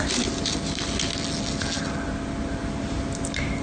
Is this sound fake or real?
real